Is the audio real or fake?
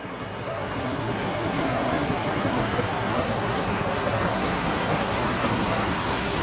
fake